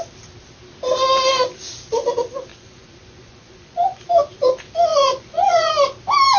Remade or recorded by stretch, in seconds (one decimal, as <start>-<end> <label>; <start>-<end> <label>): 0.0-2.5 recorded; 2.5-4.0 remade; 4.0-4.9 recorded; 4.9-5.7 remade; 5.7-6.4 recorded